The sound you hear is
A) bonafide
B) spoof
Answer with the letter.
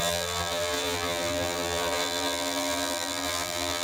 B